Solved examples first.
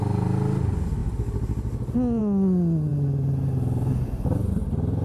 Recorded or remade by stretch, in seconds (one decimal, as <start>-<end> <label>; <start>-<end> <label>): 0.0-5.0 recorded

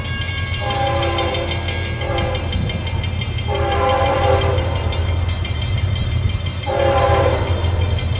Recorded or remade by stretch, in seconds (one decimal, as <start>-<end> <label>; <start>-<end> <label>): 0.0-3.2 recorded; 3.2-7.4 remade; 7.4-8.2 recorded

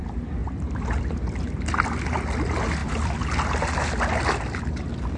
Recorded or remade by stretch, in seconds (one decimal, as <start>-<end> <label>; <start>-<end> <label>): 0.0-0.4 recorded; 0.4-1.0 remade; 1.0-5.2 recorded

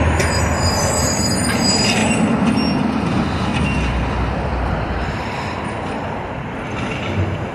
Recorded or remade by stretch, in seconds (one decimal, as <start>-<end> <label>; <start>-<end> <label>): 0.0-2.0 recorded; 2.0-2.5 remade; 2.5-3.5 recorded; 3.5-6.3 remade; 6.3-7.5 recorded